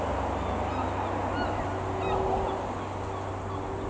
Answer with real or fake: real